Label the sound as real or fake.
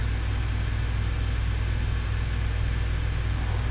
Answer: real